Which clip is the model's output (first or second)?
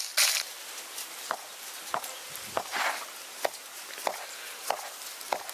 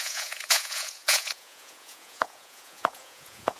second